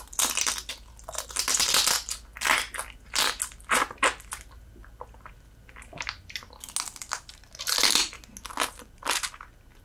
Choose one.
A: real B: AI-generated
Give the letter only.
A